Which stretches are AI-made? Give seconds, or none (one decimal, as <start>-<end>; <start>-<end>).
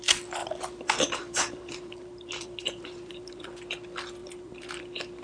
0.4-3.5; 4.2-4.8